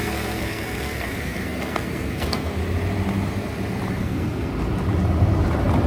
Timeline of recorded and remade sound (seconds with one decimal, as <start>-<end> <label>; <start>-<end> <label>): 0.0-2.6 remade; 2.6-3.9 recorded; 3.9-4.5 remade; 4.5-5.9 recorded